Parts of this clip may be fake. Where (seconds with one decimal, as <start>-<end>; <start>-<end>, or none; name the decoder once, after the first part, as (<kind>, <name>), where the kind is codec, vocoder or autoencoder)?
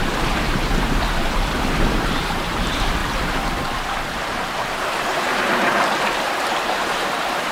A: 0.0-7.5 (vocoder, BigVGAN v2)